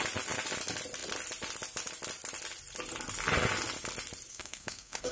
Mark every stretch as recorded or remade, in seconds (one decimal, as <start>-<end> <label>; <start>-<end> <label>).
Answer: 0.0-4.3 recorded; 4.3-5.1 remade

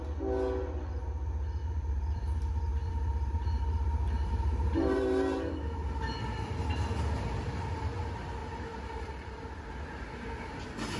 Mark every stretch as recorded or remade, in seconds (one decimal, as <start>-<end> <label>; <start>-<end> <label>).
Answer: 0.0-1.6 recorded; 1.6-5.9 remade; 5.9-8.4 recorded; 8.4-9.7 remade; 9.7-11.0 recorded

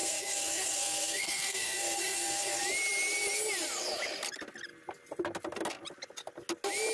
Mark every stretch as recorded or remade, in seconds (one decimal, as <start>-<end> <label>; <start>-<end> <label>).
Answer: 0.0-2.6 remade; 2.6-6.9 recorded

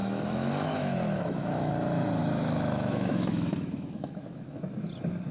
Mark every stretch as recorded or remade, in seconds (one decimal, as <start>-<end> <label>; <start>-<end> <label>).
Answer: 0.0-1.7 remade; 1.7-2.2 recorded; 2.2-4.6 remade; 4.6-5.3 recorded

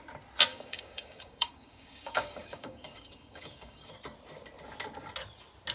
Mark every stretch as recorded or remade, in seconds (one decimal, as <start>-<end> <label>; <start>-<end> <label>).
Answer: 0.0-0.5 recorded; 0.5-3.9 remade; 3.9-5.7 recorded

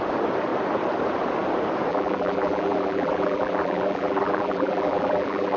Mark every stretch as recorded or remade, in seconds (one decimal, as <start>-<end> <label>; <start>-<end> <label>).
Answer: 0.0-1.9 recorded; 1.9-5.6 remade

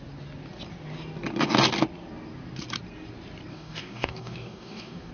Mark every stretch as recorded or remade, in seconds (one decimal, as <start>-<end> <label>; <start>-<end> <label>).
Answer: 0.0-3.5 recorded; 3.5-5.1 remade